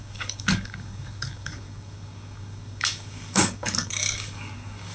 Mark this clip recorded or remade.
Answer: remade